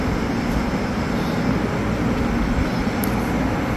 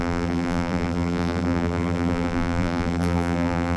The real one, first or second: first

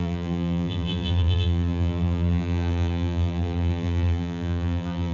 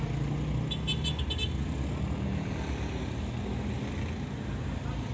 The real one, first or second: second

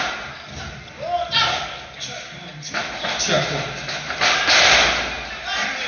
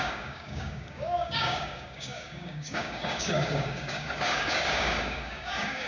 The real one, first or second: first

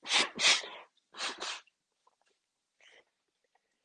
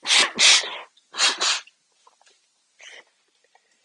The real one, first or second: second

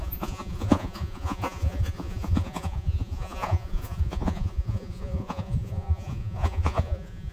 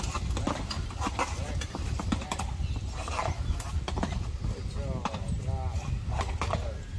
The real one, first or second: second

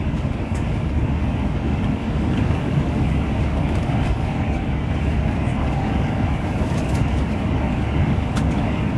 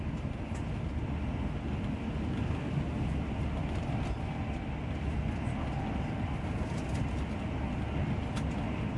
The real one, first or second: second